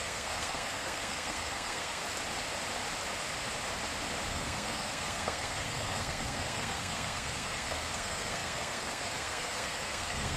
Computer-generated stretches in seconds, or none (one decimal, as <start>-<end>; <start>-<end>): 0.0-2.0; 4.3-10.4